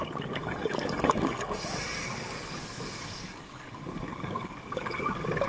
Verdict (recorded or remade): remade